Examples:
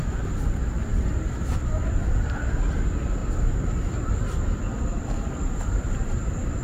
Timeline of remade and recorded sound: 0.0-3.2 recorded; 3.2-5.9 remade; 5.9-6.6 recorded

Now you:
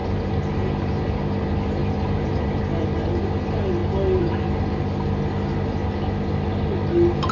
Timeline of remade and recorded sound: 0.0-1.2 remade; 1.2-1.8 recorded; 1.8-2.6 remade; 2.6-7.3 recorded

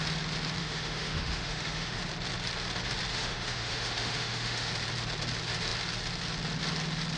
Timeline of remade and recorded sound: 0.0-0.6 recorded; 0.6-2.0 remade; 2.0-3.1 recorded; 3.1-4.7 remade; 4.7-7.2 recorded

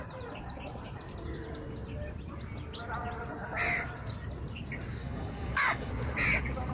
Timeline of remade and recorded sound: 0.0-5.0 recorded; 5.0-5.9 remade; 5.9-6.7 recorded

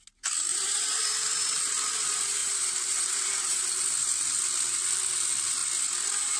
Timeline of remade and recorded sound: 0.0-0.5 recorded; 0.5-1.0 remade; 1.0-2.4 recorded; 2.4-3.6 remade; 3.6-6.4 recorded

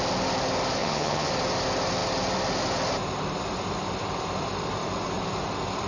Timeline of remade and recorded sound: 0.0-0.8 recorded; 0.8-1.3 remade; 1.3-5.9 recorded

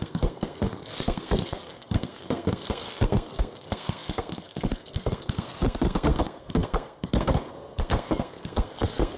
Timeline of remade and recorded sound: 0.0-9.2 remade

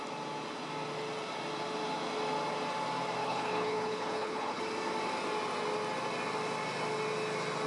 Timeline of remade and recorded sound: 0.0-3.2 recorded; 3.2-4.6 remade; 4.6-7.7 recorded